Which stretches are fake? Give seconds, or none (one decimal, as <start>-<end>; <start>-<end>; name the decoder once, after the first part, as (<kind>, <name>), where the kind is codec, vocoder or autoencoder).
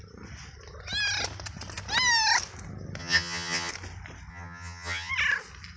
3.0-3.7 (vocoder, HiFi-GAN); 4.3-5.1